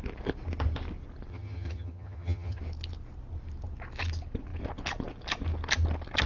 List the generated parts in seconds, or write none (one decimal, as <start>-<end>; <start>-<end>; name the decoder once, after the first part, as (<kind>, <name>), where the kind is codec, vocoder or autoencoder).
1.3-2.6 (vocoder, HiFi-GAN)